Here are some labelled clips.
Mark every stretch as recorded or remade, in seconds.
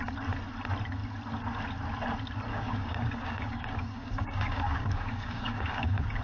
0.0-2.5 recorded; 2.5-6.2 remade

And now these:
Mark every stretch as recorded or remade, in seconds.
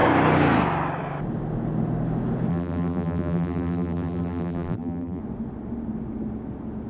0.0-2.5 recorded; 2.5-5.2 remade; 5.2-6.9 recorded